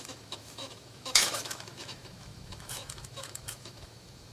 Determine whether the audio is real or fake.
fake